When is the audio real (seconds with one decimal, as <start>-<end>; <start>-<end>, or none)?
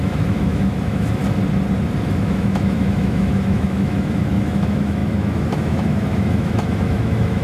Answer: 1.2-2.1